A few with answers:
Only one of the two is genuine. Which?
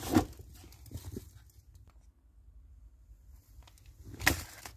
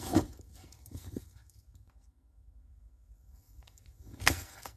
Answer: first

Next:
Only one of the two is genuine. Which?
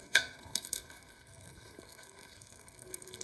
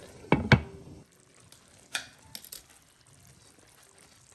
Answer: second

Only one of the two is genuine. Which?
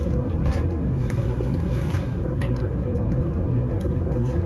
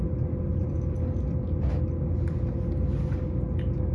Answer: second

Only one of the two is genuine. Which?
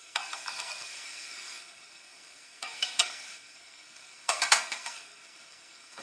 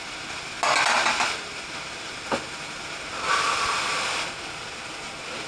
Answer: second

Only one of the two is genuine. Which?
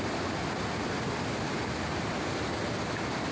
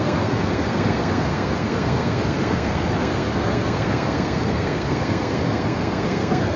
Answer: first